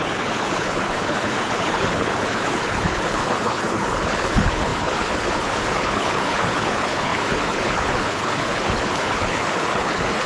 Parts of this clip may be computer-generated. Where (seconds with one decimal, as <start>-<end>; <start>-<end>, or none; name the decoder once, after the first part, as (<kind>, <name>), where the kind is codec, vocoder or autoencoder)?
0.0-10.3 (codec, HILCodec)